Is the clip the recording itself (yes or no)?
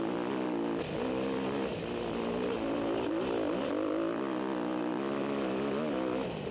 yes